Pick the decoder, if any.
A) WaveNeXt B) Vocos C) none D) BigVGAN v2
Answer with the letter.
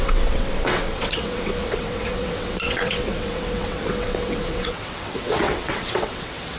A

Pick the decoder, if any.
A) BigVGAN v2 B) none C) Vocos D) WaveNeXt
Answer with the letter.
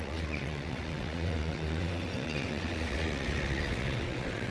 D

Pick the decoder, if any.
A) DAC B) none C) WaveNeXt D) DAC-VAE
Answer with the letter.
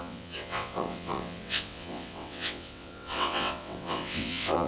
C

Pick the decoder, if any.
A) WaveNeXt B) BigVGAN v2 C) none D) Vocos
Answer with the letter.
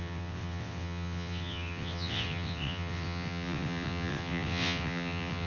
A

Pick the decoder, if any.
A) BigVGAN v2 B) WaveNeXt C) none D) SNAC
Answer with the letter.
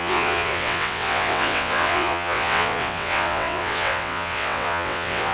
B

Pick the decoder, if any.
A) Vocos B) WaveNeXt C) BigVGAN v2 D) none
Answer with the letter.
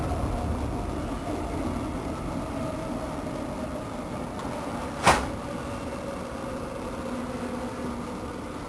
D